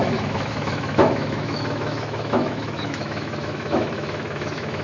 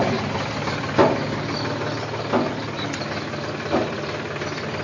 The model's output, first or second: first